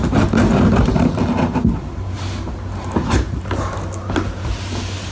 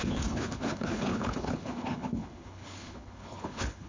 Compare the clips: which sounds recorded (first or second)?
first